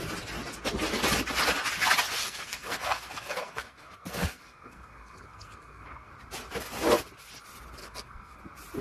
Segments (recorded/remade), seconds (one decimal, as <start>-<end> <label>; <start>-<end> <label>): 0.0-2.2 recorded; 2.2-6.1 remade; 6.1-7.8 recorded; 7.8-8.4 remade; 8.4-8.8 recorded